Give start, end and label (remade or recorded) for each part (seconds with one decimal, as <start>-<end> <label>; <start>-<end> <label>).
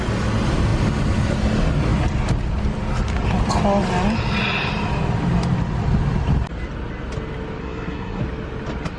0.0-7.6 recorded; 7.6-8.2 remade; 8.2-9.0 recorded